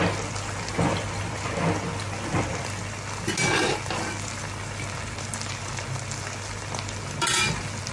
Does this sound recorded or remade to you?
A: recorded